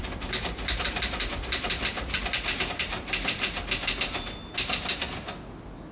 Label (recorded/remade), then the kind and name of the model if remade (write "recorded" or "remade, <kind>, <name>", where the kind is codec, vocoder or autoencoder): recorded